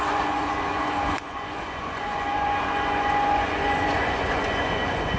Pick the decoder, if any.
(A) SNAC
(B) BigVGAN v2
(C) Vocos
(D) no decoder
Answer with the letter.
C